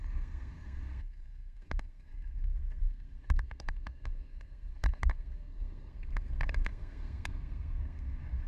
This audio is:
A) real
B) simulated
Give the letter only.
B